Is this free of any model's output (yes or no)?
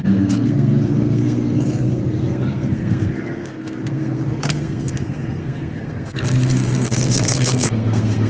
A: no